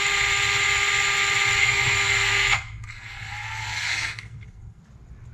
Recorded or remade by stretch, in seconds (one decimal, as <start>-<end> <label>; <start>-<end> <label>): 0.0-1.6 recorded; 1.6-4.8 remade; 4.8-5.3 recorded